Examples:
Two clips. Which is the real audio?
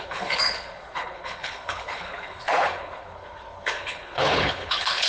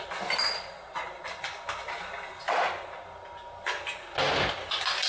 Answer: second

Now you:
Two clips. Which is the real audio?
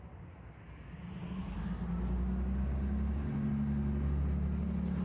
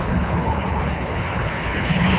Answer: first